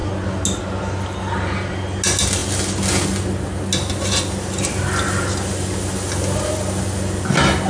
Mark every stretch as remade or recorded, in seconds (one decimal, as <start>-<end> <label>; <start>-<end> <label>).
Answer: 0.0-7.7 recorded